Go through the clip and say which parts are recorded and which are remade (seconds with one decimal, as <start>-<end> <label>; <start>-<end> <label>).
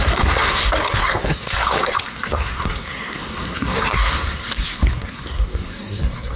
0.0-6.4 remade